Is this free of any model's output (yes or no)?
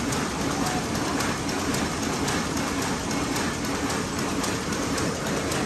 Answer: yes